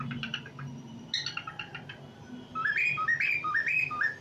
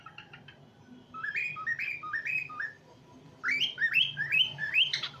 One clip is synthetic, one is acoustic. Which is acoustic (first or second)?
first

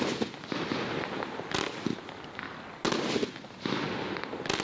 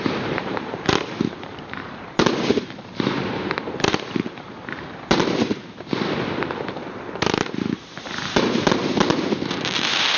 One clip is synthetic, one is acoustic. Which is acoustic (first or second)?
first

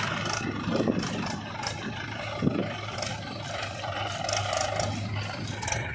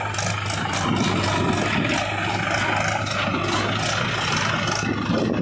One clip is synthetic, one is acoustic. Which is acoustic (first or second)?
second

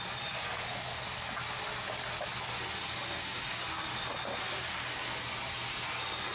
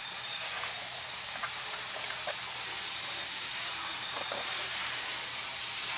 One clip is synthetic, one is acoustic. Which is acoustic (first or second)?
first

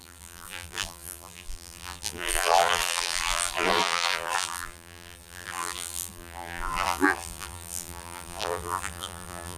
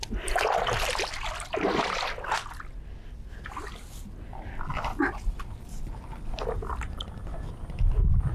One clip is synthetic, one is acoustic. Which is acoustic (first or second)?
second